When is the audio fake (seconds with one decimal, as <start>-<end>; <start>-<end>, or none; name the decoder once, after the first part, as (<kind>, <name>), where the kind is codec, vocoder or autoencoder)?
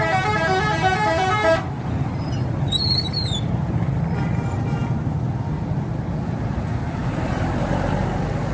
none